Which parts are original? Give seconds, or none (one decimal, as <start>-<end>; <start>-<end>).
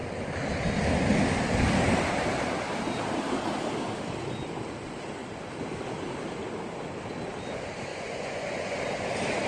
0.0-7.9; 8.8-9.5